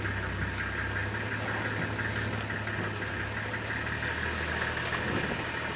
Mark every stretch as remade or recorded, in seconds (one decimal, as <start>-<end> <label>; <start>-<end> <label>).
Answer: 0.0-5.8 recorded